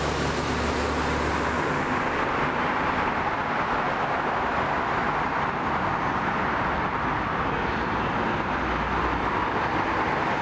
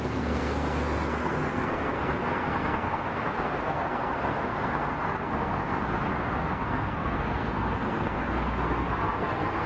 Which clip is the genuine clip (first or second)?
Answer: first